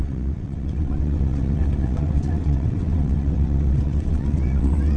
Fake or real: fake